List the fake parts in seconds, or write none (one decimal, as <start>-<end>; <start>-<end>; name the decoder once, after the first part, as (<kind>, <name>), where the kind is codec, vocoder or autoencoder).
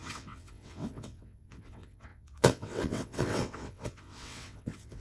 0.0-5.0 (vocoder, WaveNeXt)